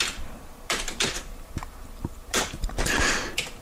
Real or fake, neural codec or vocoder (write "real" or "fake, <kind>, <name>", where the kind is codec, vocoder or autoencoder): fake, vocoder, BigVGAN v2